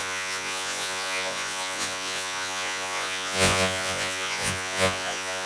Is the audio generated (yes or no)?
yes